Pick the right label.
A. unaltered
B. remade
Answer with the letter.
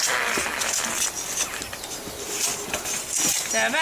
A